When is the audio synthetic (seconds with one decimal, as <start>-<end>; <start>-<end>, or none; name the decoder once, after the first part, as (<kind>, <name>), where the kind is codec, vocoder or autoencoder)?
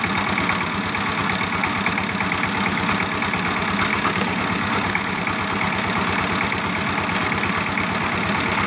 3.9-5.2 (codec, DAC)